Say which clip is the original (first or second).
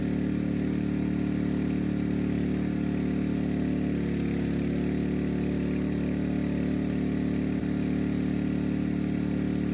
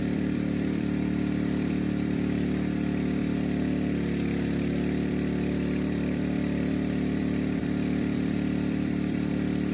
first